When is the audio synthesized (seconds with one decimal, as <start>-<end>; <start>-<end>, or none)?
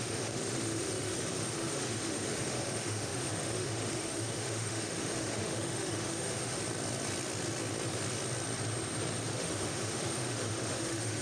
0.0-6.6; 9.3-11.2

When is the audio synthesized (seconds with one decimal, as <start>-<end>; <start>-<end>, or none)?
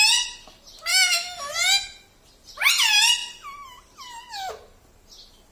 0.9-1.5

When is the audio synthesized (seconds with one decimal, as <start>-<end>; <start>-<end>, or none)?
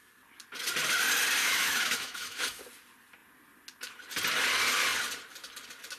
1.4-2.6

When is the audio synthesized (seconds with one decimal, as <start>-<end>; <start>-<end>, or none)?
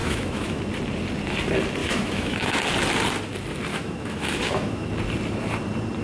0.0-0.6; 1.8-2.6; 3.7-4.9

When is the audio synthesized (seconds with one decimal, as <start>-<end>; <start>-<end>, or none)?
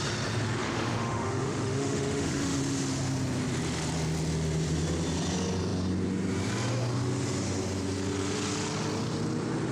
0.6-2.6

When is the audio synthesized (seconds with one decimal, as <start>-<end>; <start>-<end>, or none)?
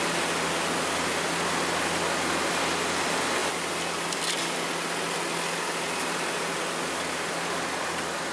none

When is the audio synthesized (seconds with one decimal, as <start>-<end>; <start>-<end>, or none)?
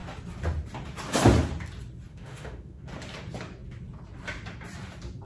2.1-2.8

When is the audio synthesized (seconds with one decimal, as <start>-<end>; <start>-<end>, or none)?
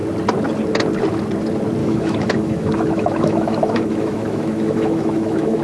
1.8-5.6